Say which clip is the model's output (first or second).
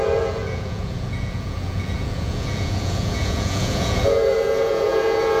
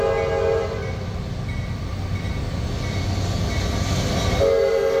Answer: first